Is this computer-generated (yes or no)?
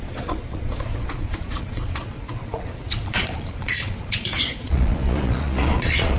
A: yes